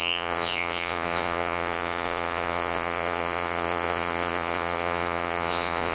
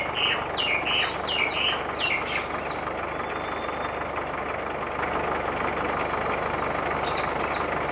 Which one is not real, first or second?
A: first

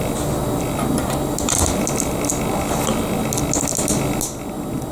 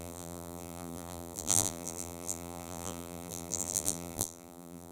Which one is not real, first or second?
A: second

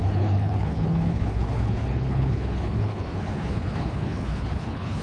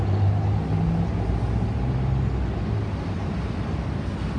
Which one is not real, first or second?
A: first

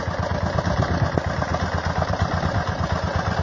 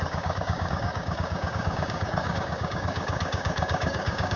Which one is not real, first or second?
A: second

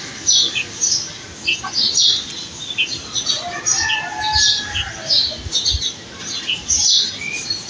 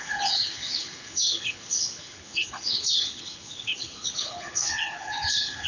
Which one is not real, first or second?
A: second